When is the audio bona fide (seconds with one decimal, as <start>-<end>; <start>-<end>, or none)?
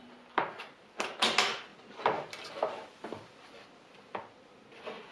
0.0-5.1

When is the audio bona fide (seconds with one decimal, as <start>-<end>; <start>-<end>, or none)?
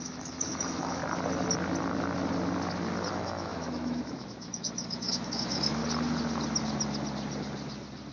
1.0-3.1; 5.8-8.1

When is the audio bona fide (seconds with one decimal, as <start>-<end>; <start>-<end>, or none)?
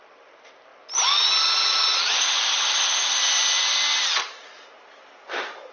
0.0-5.7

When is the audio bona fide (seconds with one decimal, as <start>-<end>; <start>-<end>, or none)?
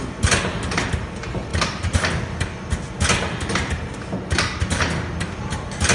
0.0-5.9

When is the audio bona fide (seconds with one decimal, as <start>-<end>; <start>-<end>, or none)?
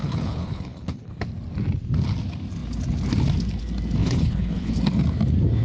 1.2-4.0; 4.8-5.6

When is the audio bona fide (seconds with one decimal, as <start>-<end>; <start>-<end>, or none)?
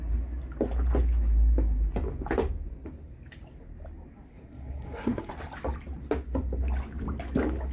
0.0-4.3; 5.3-7.7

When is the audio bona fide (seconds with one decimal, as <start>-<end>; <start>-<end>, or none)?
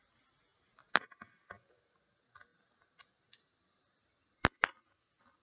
0.0-0.5; 1.1-5.4